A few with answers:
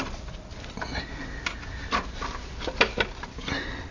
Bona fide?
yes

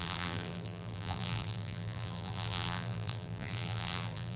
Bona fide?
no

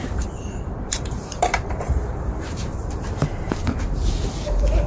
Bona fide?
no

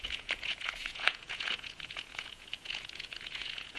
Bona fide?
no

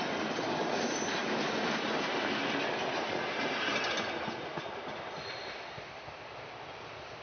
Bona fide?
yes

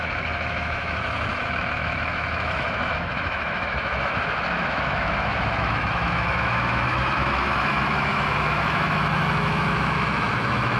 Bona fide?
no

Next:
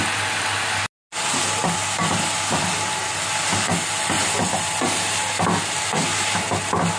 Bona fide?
yes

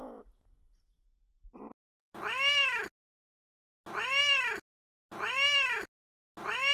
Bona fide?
yes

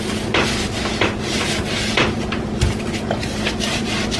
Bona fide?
yes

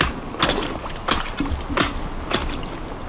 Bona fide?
yes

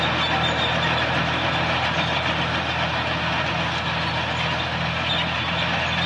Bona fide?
yes